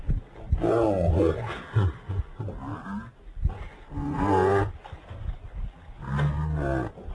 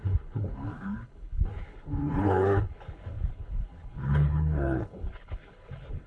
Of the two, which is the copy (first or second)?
second